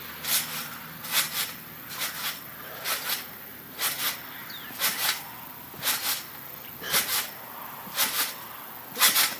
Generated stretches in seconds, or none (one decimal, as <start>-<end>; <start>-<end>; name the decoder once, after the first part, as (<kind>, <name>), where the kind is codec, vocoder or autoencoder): none